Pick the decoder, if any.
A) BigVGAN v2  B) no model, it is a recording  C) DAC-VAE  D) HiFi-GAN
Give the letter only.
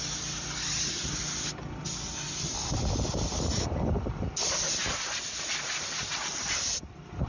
B